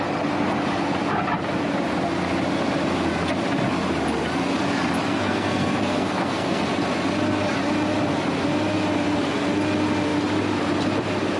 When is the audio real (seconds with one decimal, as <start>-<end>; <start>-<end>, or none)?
0.0-5.0; 6.6-11.4

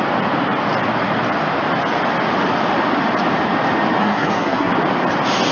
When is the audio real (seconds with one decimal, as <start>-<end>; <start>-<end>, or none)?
0.0-4.0; 4.7-5.5

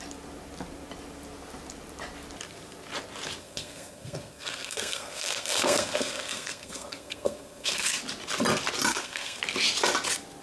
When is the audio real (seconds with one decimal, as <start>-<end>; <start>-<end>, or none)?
0.0-3.4; 8.0-8.9; 9.4-10.4

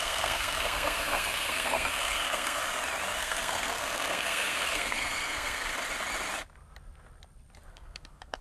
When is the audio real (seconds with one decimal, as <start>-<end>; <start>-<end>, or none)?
2.6-3.2; 5.7-7.7

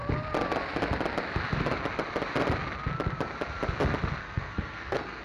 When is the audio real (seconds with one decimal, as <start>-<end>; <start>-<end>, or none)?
0.0-4.2

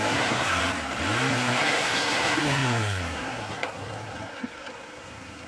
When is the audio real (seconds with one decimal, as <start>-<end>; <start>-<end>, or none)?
0.6-1.3

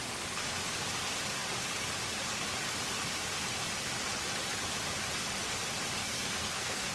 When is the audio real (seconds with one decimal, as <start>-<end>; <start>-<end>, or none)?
0.0-6.0